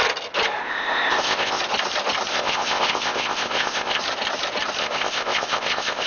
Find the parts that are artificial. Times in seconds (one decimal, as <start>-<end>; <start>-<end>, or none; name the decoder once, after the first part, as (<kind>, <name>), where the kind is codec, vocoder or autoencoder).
0.6-1.6 (codec, ZipCodec); 2.3-4.0; 4.8-6.1